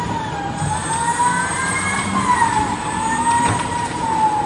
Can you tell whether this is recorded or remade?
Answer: recorded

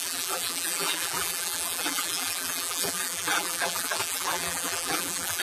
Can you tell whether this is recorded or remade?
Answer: remade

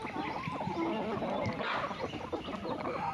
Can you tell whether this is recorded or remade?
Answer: recorded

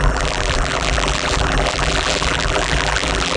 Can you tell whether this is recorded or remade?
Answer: remade